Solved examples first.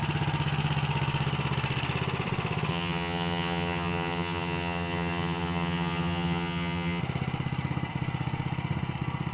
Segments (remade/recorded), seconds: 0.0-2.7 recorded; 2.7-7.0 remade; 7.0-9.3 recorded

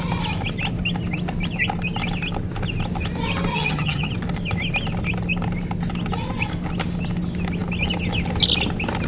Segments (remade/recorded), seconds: 0.0-3.5 recorded; 3.5-4.1 remade; 4.1-9.1 recorded

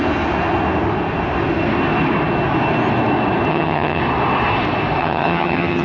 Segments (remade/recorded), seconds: 0.0-3.5 recorded; 3.5-4.0 remade; 4.0-5.0 recorded; 5.0-5.8 remade

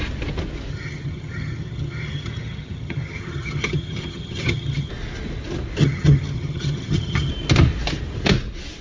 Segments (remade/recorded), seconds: 0.0-0.7 recorded; 0.7-4.9 remade; 4.9-5.8 recorded; 5.8-7.3 remade; 7.3-8.8 recorded

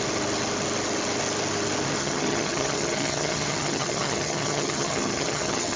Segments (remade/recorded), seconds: 0.0-2.0 recorded; 2.0-5.8 remade